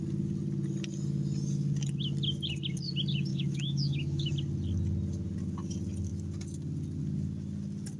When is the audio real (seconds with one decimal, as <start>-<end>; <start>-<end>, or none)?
0.0-3.3; 4.3-8.0